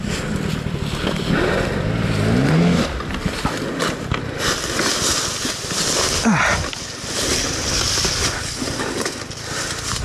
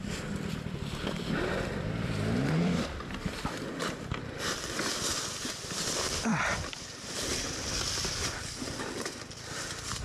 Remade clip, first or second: second